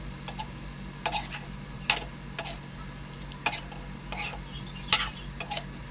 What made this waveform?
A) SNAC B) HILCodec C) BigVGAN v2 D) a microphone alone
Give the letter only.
D